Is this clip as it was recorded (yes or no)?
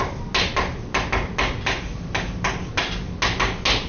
yes